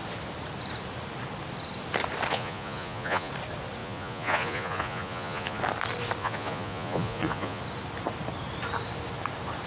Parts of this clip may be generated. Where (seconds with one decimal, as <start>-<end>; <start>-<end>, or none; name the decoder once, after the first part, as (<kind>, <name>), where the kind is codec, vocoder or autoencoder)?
2.3-3.3 (vocoder, Vocos); 3.8-5.6; 6.2-7.6